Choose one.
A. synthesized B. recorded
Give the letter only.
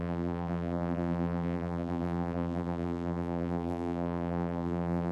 A